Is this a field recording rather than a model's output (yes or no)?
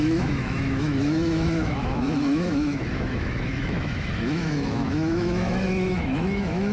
no